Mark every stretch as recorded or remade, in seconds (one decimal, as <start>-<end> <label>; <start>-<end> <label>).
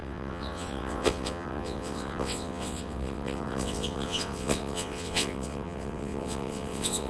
0.0-7.1 remade